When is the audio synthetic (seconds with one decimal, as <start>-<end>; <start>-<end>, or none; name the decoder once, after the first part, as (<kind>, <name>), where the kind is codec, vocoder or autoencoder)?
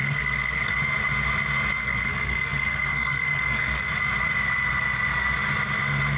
0.0-0.7 (codec, SNAC); 1.8-3.9